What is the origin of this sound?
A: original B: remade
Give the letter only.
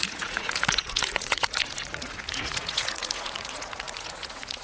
B